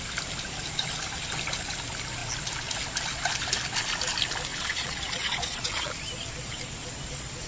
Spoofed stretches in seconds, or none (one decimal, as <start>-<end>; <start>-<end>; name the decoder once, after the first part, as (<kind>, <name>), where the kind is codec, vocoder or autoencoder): 4.5-5.9 (vocoder, Vocos)